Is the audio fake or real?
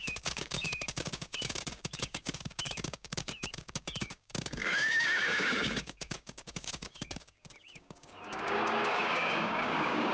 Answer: fake